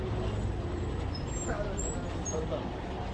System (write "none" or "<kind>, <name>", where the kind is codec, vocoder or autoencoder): none